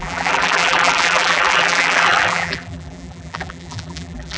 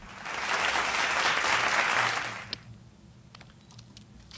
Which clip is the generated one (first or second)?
first